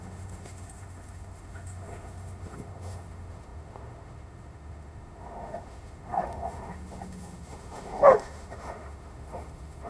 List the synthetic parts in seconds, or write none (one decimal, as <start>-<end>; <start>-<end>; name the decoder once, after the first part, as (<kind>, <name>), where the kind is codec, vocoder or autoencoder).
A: 0.0-9.9 (autoencoder, DAC-VAE)

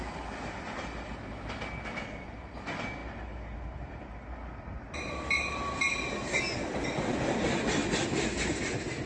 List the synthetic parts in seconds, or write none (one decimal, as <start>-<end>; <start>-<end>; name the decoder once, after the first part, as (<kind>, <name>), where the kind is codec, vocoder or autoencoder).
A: none